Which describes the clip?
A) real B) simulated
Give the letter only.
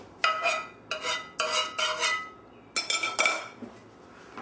A